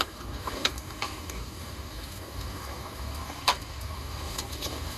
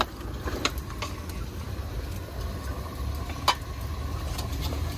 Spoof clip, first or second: first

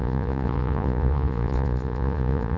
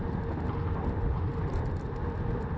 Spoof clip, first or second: first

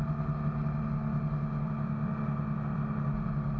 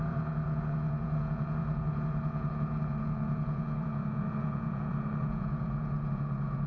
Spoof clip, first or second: second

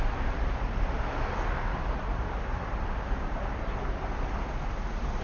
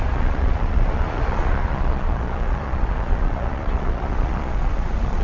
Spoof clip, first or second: second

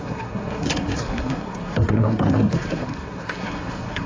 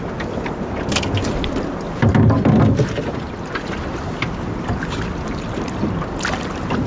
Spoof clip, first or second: first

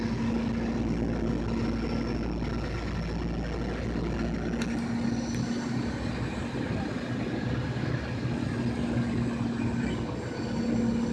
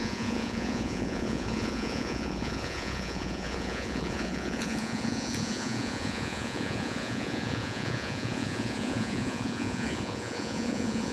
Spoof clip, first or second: second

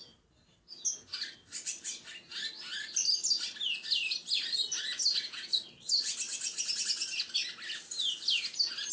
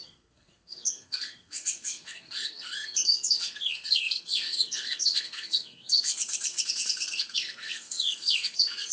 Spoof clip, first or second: second